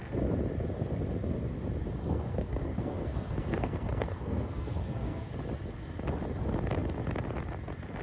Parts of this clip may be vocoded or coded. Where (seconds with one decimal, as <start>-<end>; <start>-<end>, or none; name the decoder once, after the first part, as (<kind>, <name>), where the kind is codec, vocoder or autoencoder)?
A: 2.0-5.3 (codec, SNAC)